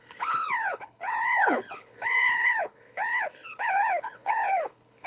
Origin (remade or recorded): remade